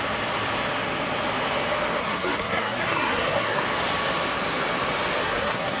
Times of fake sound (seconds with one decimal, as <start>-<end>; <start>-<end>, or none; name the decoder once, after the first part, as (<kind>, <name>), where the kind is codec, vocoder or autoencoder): 2.0-3.6 (codec, SNAC); 5.2-5.8